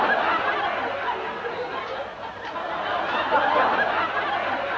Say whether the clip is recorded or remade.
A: recorded